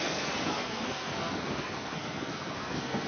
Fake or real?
fake